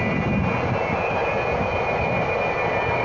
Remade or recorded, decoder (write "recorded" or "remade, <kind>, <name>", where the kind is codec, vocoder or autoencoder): recorded